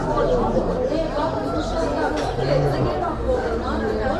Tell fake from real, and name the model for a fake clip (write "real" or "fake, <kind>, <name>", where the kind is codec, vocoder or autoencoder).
real